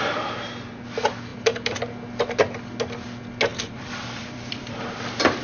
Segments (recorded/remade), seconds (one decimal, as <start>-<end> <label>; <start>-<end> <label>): 0.0-1.3 recorded; 1.3-1.8 remade; 1.8-3.5 recorded; 3.5-5.4 remade